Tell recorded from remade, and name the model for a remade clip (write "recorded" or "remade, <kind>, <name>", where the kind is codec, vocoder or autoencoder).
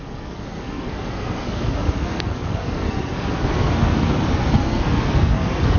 remade, codec, SNAC